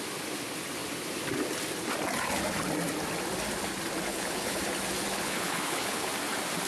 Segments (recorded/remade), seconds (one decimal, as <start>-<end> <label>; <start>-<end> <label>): 0.0-4.1 recorded; 4.1-4.6 remade; 4.6-5.1 recorded; 5.1-6.1 remade; 6.1-6.7 recorded